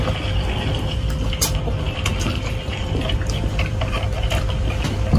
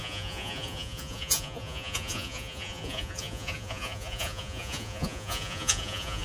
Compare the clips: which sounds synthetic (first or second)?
second